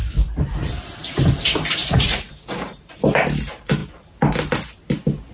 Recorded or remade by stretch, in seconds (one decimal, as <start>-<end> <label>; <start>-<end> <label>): 0.0-1.8 recorded; 1.8-2.3 remade; 2.3-5.3 recorded